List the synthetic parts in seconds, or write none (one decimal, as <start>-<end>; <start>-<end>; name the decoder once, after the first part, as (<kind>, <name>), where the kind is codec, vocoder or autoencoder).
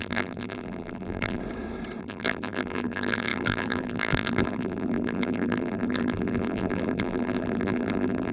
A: 0.0-1.4 (vocoder, BigVGAN v2); 2.0-8.3